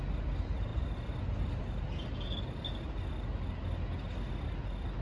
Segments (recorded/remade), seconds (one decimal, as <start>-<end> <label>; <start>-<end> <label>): 0.0-5.0 recorded